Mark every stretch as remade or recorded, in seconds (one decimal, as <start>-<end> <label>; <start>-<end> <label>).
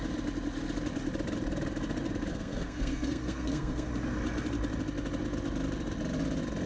0.0-2.3 recorded; 2.3-3.9 remade; 3.9-6.7 recorded